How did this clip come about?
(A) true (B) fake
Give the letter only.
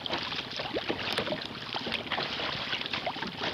A